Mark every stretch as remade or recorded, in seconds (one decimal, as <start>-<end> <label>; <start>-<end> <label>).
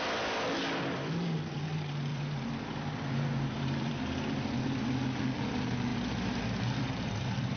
0.0-2.1 recorded; 2.1-4.0 remade; 4.0-5.9 recorded; 5.9-7.6 remade